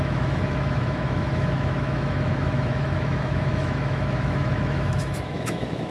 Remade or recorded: remade